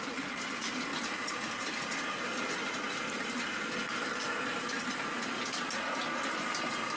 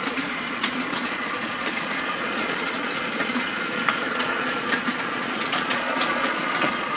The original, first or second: first